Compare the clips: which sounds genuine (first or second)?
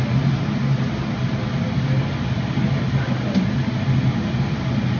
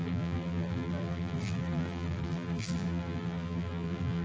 first